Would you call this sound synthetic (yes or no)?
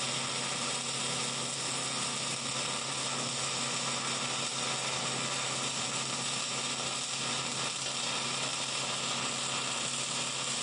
no